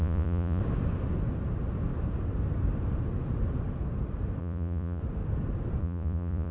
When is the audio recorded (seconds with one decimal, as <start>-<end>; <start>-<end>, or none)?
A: 0.6-4.4; 5.0-5.8